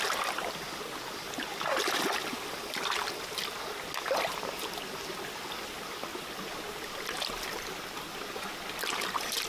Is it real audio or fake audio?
real